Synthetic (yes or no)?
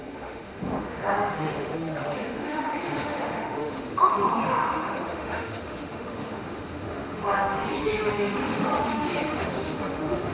yes